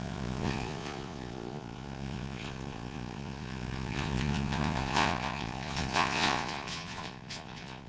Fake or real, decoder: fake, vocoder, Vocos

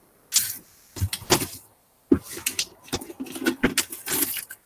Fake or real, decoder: real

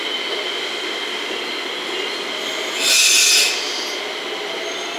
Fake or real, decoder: real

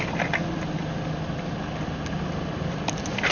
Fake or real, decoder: real